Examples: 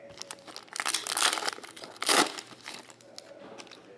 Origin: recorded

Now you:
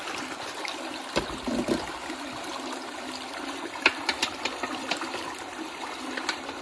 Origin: recorded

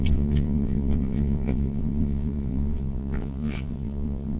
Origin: remade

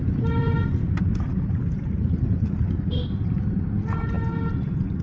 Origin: recorded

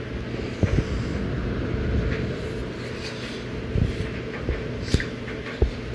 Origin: recorded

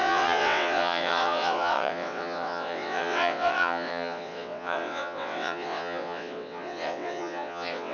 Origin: remade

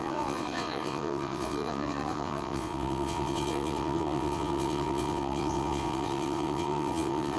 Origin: remade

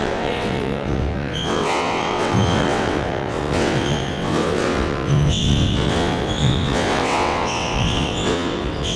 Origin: remade